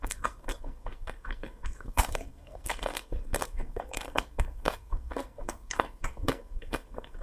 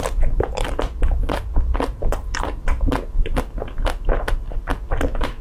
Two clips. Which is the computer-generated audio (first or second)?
first